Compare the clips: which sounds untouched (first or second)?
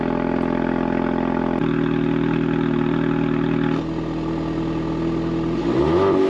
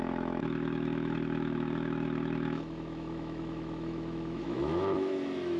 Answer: first